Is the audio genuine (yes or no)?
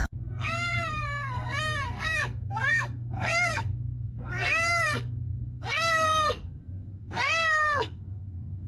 no